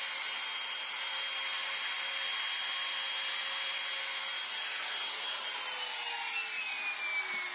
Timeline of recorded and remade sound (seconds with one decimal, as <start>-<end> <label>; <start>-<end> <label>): 0.0-7.5 recorded